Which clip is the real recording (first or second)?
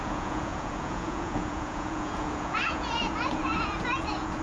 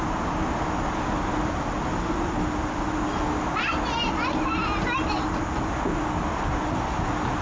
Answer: second